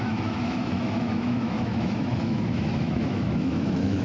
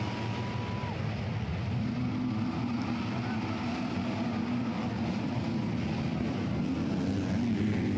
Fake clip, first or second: first